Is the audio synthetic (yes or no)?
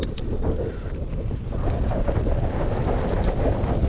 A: no